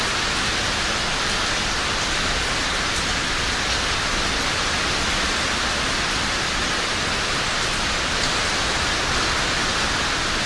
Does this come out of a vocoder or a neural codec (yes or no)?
no